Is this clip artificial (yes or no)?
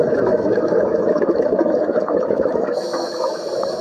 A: yes